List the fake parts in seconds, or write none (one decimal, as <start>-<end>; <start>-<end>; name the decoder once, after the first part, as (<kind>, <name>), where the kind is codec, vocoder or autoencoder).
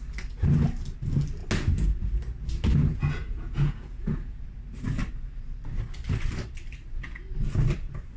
2.9-4.4 (vocoder, Vocos)